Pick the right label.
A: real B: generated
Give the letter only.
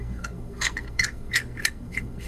B